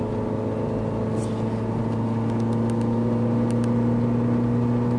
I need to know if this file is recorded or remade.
recorded